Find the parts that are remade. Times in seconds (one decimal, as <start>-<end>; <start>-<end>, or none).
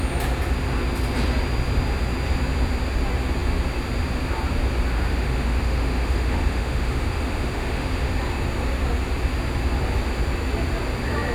4.9-8.1